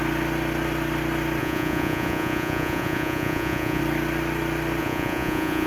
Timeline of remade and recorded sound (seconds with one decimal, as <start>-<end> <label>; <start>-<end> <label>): 0.0-1.4 recorded; 1.4-3.8 remade; 3.8-4.8 recorded; 4.8-5.7 remade